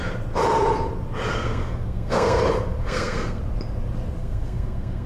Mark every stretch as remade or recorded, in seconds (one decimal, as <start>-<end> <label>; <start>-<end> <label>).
0.0-1.3 recorded; 1.3-2.4 remade; 2.4-2.8 recorded; 2.8-3.4 remade; 3.4-4.2 recorded; 4.2-5.1 remade